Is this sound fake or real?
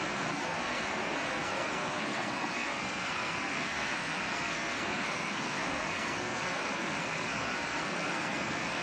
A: fake